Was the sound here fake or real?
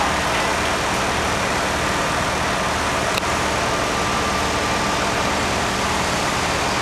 real